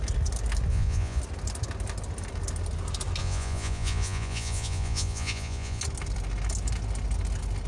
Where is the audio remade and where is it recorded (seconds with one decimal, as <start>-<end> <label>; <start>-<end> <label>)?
0.0-0.7 recorded; 0.7-1.2 remade; 1.2-3.2 recorded; 3.2-5.8 remade; 5.8-7.7 recorded